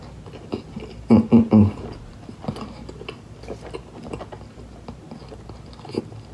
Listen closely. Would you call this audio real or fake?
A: real